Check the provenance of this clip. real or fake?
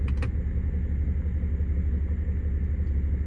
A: real